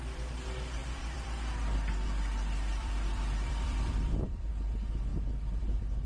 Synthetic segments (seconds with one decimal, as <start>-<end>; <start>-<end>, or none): 0.8-4.5